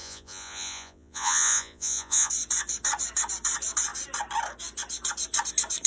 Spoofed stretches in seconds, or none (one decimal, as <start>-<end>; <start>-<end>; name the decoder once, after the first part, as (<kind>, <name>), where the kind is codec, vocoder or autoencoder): 0.0-2.3 (vocoder, Vocos)